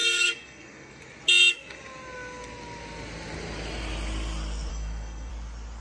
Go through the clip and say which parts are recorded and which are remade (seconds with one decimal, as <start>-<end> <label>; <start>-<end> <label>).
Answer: 0.0-1.0 remade; 1.0-4.7 recorded; 4.7-5.3 remade; 5.3-5.8 recorded